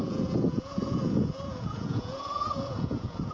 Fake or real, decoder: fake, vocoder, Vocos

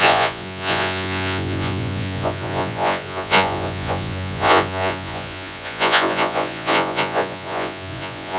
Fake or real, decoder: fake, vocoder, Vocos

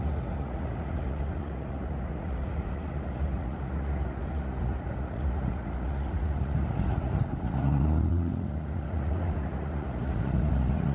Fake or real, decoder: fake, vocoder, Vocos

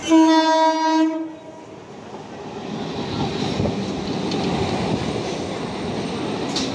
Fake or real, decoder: real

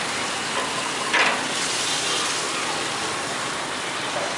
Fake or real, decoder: real